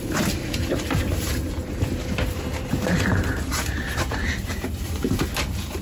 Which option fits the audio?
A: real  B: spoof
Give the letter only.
B